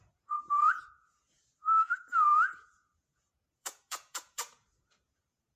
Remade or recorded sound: remade